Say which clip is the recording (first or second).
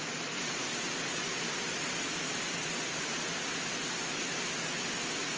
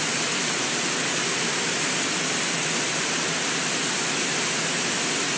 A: first